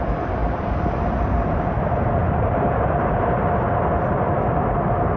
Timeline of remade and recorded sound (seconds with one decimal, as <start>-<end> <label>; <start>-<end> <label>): 0.0-0.4 recorded; 0.4-3.5 remade; 3.5-5.2 recorded